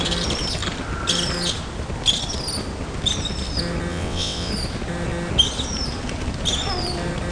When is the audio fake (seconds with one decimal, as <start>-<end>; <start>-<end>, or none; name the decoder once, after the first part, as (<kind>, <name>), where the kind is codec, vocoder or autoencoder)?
3.9-4.5 (vocoder, WaveNeXt)